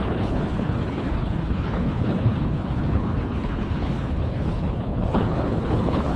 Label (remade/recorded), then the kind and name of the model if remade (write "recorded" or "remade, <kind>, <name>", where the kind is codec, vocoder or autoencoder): remade, codec, HILCodec